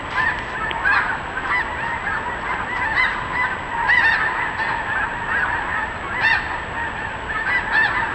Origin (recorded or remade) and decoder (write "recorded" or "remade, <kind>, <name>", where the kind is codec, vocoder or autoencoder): recorded